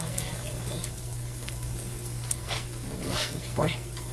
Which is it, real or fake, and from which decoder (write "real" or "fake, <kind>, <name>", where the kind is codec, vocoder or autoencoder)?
fake, codec, SNAC